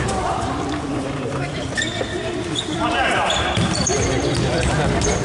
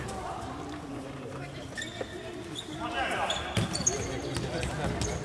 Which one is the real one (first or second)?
second